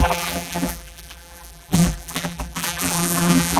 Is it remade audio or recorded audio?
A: remade